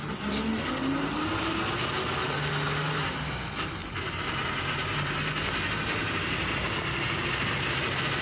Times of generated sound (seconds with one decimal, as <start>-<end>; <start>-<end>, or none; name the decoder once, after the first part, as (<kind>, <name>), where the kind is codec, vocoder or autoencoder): 3.8-4.5 (vocoder, BigVGAN v2); 6.0-6.8